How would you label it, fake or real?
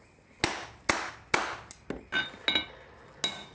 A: real